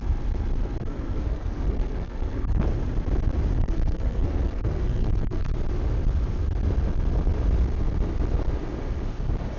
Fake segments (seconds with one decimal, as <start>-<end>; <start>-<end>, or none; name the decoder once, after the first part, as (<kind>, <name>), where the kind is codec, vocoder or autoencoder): 0.8-2.6 (codec, SNAC); 3.5-5.5